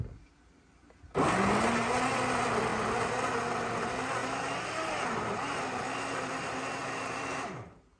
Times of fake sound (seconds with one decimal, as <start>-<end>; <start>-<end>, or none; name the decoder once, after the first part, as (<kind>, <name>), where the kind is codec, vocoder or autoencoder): 4.2-5.6 (vocoder, BigVGAN v2); 6.8-8.0